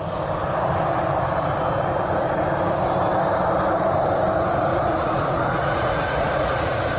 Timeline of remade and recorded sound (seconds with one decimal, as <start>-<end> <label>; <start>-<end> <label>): 0.0-4.7 recorded; 4.7-7.0 remade